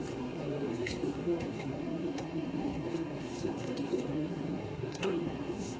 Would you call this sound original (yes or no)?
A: no